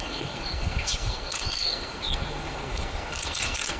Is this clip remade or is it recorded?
remade